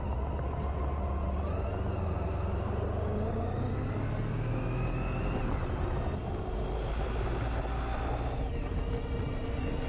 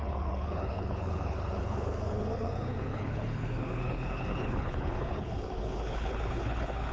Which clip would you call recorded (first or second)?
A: first